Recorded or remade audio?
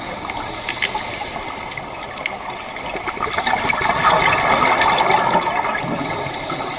recorded